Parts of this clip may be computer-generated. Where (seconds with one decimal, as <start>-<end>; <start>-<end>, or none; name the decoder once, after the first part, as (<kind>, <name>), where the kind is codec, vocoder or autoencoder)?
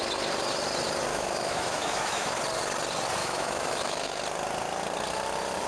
1.1-2.4 (autoencoder, DAC-VAE); 3.2-4.2